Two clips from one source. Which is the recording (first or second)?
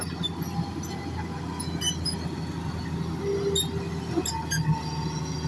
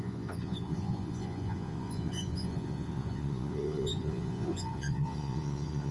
first